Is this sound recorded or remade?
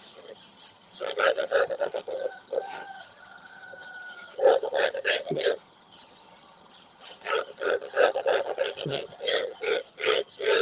remade